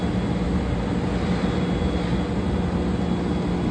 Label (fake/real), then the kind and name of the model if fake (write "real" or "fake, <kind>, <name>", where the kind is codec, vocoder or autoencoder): real